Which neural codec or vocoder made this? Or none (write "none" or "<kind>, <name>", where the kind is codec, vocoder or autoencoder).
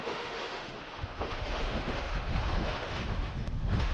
autoencoder, DAC-VAE